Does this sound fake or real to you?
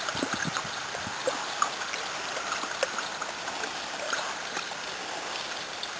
real